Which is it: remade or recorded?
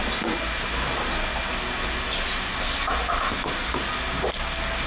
recorded